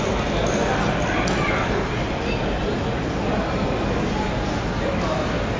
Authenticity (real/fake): real